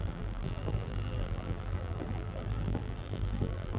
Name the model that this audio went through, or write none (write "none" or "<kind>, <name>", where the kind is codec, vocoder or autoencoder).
vocoder, BigVGAN v2